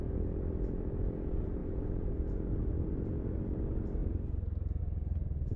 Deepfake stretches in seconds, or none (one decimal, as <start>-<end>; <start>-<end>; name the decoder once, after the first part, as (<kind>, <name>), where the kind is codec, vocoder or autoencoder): 0.0-5.6 (vocoder, BigVGAN v2)